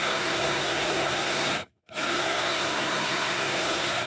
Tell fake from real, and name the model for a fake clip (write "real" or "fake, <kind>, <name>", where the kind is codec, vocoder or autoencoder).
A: fake, codec, SNAC